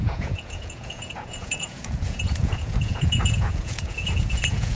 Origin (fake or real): fake